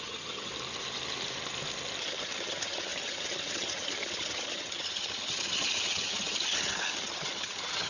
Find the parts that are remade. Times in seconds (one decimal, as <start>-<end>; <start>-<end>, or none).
0.0-0.5; 2.0-7.9